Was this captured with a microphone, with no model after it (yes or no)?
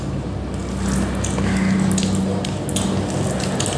yes